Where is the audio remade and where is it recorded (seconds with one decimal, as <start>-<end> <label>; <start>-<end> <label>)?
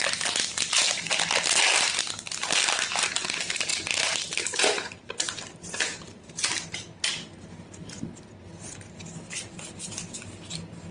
0.0-3.7 recorded; 3.7-7.0 remade; 7.0-10.9 recorded